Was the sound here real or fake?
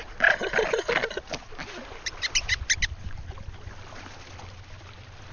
real